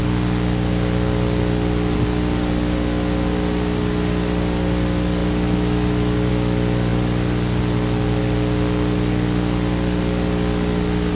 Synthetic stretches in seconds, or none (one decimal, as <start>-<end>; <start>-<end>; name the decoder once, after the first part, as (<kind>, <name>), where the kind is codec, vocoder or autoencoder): none

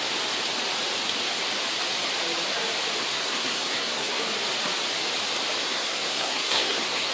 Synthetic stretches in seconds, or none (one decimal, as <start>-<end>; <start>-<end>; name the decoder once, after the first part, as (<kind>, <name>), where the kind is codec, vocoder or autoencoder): 3.1-4.2 (codec, SNAC); 5.6-7.1